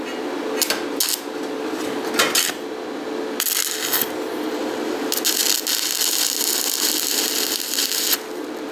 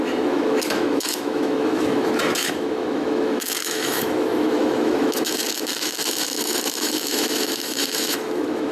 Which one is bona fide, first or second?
first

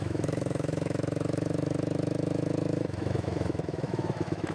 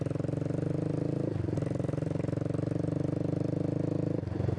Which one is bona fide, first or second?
second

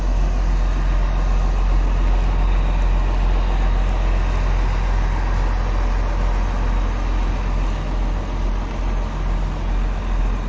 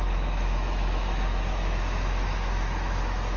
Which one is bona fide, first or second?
first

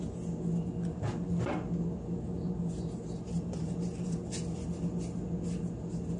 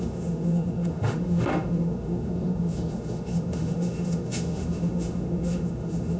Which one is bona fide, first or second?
first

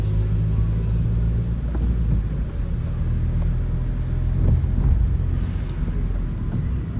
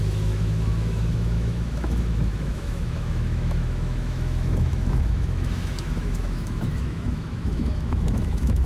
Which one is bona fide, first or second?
first